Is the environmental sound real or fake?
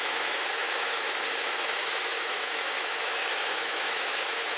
fake